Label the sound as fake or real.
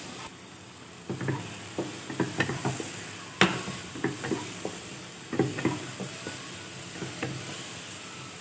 real